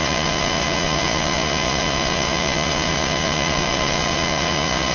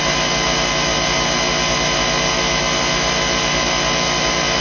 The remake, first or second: first